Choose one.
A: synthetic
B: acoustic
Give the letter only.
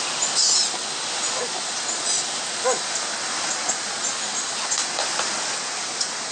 B